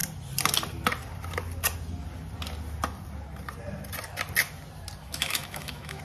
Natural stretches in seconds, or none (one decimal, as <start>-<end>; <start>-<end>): 0.0-5.0